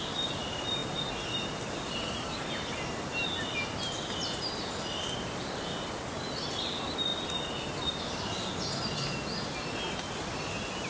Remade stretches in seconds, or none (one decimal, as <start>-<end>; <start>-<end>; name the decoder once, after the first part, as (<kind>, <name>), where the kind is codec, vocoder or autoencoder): none